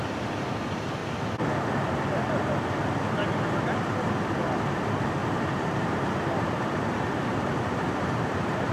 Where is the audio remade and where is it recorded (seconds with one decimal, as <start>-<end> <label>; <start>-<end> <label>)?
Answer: 0.0-1.0 remade; 1.0-4.6 recorded; 4.6-8.7 remade